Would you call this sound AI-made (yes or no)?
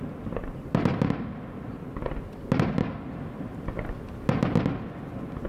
no